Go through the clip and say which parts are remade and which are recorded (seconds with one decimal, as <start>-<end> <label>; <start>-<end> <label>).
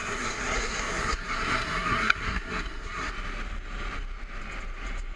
0.0-3.1 remade; 3.1-5.2 recorded